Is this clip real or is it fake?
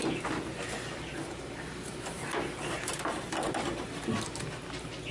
real